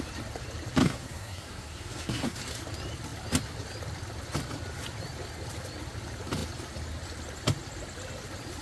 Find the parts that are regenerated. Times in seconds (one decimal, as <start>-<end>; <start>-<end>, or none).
0.8-2.4